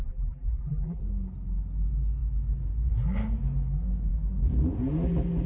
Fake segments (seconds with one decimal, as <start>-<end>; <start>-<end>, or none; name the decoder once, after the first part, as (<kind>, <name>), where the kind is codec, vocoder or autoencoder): 0.0-1.0 (vocoder, BigVGAN v2)

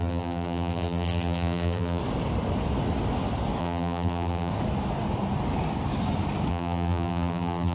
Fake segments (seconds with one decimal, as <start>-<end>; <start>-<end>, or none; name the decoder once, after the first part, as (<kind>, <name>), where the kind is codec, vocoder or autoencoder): 0.0-2.0 (vocoder, BigVGAN v2); 3.6-4.5; 6.5-7.7

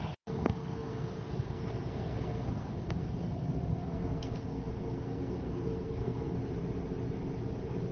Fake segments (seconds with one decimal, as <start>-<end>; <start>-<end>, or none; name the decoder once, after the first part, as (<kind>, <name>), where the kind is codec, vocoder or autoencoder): 0.0-6.4 (codec, SNAC)

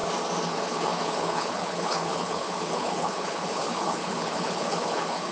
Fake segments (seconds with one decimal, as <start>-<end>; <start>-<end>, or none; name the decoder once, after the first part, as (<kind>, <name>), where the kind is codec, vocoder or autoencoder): 0.5-5.3 (codec, HILCodec)

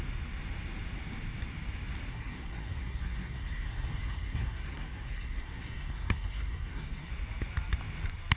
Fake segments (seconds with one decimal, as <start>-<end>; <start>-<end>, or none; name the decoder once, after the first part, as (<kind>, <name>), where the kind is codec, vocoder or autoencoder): 2.1-7.1 (codec, SNAC)

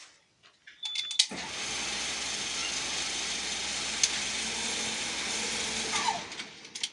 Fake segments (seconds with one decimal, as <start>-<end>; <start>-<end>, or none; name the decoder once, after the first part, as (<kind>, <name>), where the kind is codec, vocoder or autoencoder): none

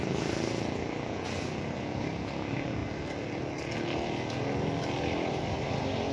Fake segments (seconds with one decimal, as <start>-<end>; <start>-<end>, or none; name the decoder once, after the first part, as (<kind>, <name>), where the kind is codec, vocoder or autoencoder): none

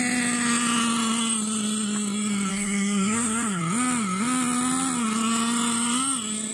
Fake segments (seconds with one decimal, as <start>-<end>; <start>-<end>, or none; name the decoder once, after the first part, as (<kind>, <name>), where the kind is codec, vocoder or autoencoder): 2.5-3.6 (codec, SNAC)